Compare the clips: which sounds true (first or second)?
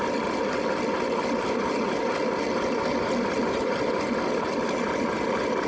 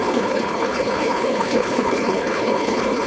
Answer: first